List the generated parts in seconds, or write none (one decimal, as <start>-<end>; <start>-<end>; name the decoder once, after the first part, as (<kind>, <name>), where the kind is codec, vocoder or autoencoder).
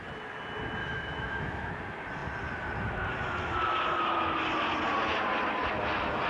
0.8-1.7 (autoencoder, DAC-VAE)